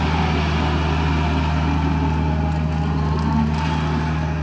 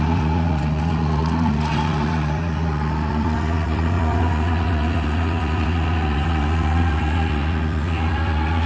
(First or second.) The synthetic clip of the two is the second